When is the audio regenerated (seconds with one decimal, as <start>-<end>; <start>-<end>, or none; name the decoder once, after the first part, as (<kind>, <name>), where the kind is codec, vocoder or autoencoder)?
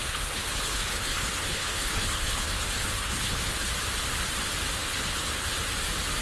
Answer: 0.0-3.7 (codec, HILCodec); 4.8-5.5